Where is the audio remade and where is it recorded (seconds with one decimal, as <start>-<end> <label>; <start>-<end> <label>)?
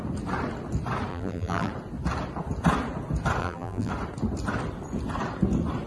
0.0-1.1 recorded; 1.1-1.7 remade; 1.7-3.4 recorded; 3.4-3.9 remade; 3.9-5.9 recorded